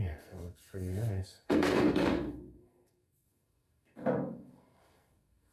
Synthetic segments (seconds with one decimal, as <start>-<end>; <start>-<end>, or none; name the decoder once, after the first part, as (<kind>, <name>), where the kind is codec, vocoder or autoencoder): 0.0-5.5 (codec, SNAC)